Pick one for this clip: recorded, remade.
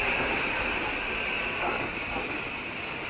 recorded